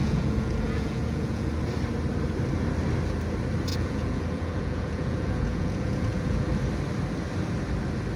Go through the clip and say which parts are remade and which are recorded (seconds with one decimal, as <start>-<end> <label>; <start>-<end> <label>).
0.0-1.5 remade; 1.5-3.7 recorded; 3.7-6.5 remade; 6.5-8.2 recorded